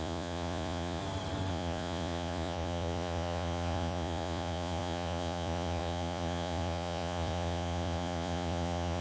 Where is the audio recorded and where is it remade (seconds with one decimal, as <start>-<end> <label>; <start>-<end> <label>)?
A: 0.0-1.0 remade; 1.0-1.5 recorded; 1.5-9.0 remade